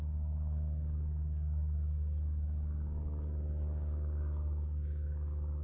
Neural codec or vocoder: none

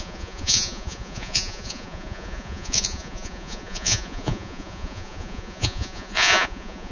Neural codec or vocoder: vocoder, Vocos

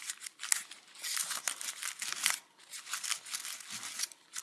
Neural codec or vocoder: none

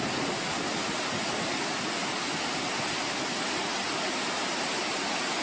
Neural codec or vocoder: none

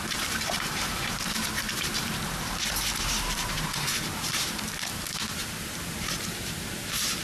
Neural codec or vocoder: vocoder, BigVGAN v2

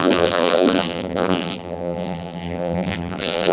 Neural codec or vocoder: vocoder, BigVGAN v2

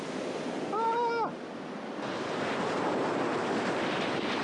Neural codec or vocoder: none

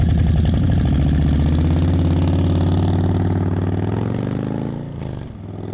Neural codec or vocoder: none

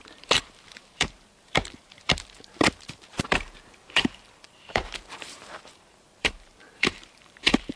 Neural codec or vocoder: vocoder, BigVGAN v2